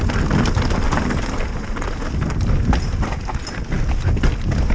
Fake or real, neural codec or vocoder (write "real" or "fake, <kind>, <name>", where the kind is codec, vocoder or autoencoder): real